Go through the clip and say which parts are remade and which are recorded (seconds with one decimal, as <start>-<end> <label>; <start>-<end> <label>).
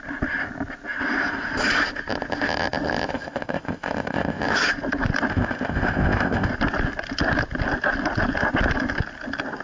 0.0-3.1 recorded; 3.1-4.4 remade; 4.4-5.3 recorded; 5.3-6.5 remade; 6.5-9.6 recorded